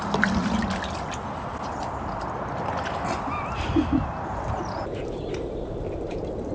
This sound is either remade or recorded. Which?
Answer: recorded